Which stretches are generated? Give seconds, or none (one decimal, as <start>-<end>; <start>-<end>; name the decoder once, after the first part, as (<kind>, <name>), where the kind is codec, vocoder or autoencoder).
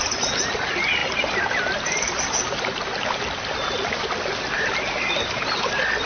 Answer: none